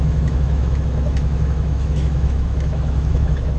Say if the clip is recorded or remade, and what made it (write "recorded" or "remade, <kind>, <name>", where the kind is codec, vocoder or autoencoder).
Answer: remade, autoencoder, DAC-VAE